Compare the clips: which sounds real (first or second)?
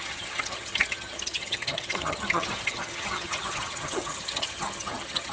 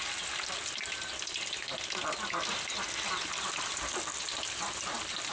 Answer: second